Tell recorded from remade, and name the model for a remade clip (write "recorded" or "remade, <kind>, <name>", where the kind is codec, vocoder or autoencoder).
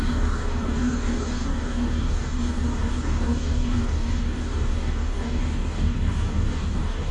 remade, codec, DAC